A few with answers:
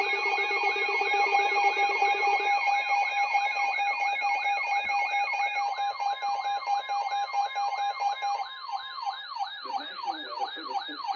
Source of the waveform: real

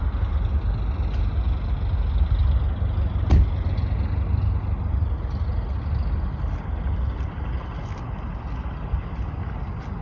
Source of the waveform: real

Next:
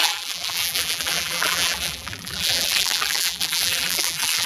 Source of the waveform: fake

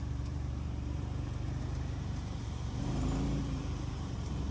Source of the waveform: fake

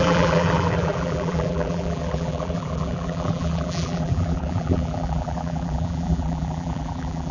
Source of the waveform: fake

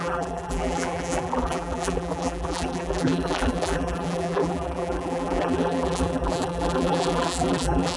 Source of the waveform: fake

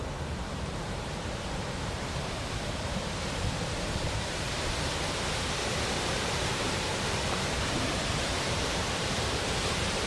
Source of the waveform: fake